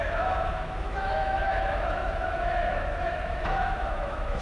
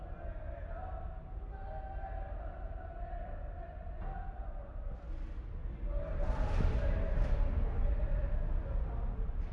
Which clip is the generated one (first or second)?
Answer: first